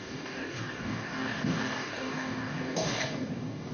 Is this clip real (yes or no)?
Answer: no